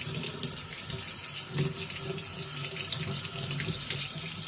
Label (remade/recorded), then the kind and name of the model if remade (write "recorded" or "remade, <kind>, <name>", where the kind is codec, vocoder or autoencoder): recorded